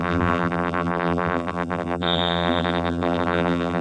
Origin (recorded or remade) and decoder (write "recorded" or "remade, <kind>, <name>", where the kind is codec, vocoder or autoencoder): remade, vocoder, BigVGAN v2